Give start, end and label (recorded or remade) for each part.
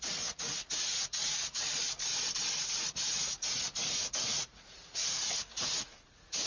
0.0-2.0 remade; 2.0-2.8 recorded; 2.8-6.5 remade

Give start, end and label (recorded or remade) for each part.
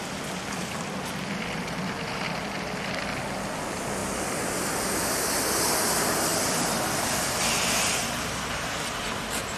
0.0-9.6 recorded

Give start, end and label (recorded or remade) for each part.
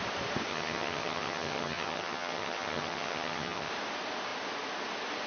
0.0-0.5 recorded; 0.5-3.7 remade; 3.7-5.3 recorded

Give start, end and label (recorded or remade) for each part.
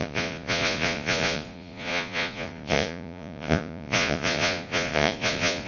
0.0-5.7 remade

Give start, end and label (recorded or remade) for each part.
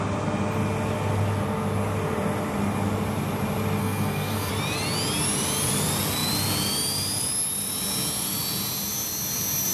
0.0-3.8 recorded; 3.8-4.5 remade; 4.5-9.7 recorded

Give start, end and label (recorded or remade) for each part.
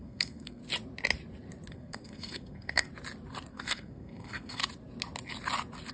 0.0-0.6 remade; 0.6-1.7 recorded; 1.7-2.9 remade; 2.9-3.5 recorded; 3.5-4.6 remade; 4.6-5.9 recorded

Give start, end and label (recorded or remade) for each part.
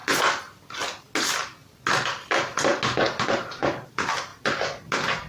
0.0-3.2 recorded; 3.2-4.3 remade; 4.3-5.3 recorded